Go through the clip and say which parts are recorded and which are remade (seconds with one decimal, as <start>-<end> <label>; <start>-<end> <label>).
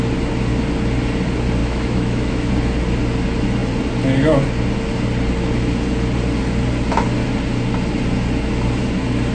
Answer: 0.0-1.6 recorded; 1.6-2.5 remade; 2.5-9.3 recorded